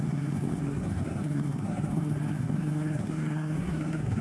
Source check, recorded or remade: remade